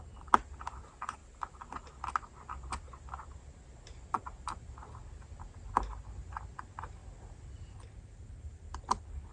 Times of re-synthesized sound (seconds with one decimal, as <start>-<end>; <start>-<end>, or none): none